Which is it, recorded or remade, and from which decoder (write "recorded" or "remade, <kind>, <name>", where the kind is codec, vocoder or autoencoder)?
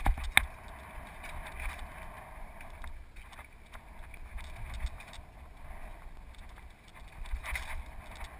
recorded